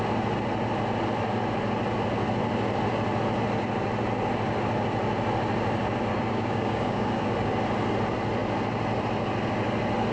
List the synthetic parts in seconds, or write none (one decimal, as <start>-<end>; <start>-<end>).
6.1-7.2